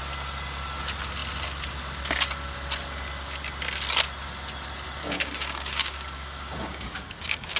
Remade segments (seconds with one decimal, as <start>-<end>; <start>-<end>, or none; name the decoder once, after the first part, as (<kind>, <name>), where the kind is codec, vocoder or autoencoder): 5.0-7.6 (codec, DAC)

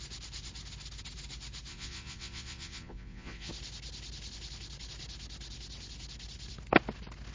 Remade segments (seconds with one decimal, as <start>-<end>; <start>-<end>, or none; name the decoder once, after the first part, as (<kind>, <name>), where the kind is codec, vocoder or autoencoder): 1.7-3.5 (vocoder, Vocos)